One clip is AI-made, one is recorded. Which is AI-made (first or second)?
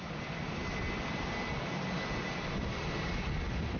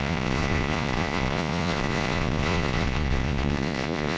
second